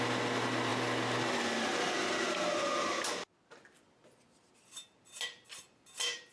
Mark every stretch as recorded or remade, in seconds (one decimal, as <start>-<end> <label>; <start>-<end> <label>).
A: 0.0-6.3 recorded